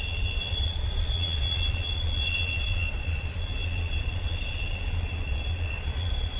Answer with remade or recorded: remade